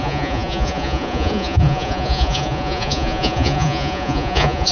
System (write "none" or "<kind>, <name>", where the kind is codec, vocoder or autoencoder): vocoder, Vocos